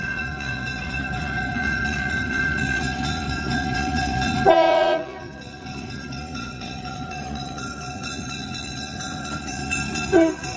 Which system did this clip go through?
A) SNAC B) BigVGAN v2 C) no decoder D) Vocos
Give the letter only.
D